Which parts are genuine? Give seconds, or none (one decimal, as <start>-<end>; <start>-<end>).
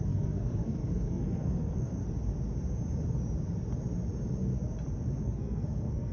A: 2.0-5.2